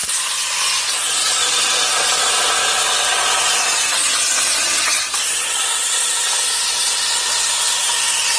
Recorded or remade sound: recorded